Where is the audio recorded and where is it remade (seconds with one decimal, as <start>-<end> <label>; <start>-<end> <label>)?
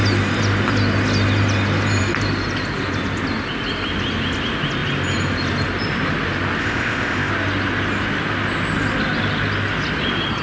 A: 0.0-6.6 recorded; 6.6-7.3 remade; 7.3-10.4 recorded